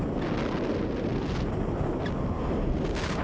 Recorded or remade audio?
recorded